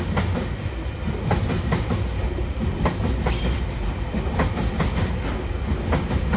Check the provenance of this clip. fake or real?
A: real